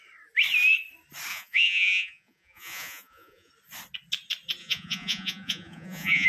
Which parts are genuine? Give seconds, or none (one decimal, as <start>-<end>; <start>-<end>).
0.0-1.3; 3.5-4.6